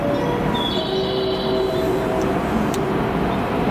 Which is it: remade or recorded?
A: recorded